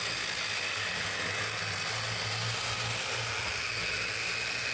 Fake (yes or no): no